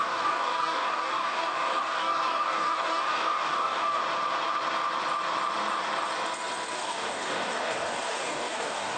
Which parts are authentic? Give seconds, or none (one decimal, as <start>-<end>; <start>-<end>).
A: 4.0-6.7